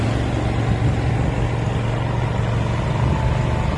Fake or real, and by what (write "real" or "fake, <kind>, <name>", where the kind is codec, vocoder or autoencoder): real